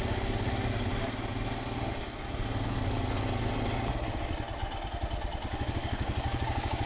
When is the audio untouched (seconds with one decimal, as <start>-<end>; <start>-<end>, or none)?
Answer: 0.0-5.8